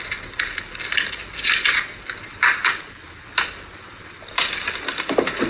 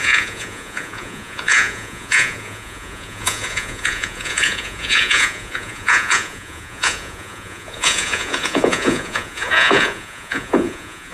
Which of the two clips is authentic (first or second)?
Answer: first